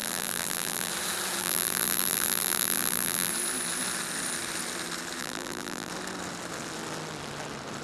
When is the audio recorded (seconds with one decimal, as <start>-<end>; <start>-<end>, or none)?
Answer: 0.9-1.4; 3.3-5.2; 5.9-7.8